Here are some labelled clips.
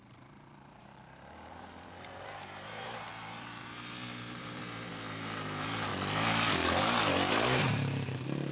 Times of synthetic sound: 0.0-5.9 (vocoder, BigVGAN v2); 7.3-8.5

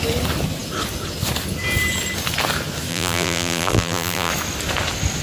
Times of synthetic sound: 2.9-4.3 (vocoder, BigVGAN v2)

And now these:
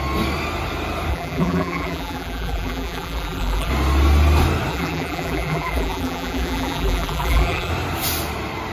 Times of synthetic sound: 1.1-3.7 (vocoder, BigVGAN v2); 4.7-7.7

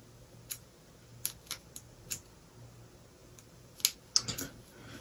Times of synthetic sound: 1.1-2.4 (vocoder, BigVGAN v2); 3.2-3.7